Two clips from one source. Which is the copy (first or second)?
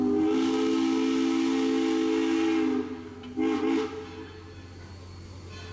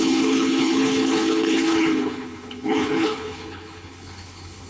second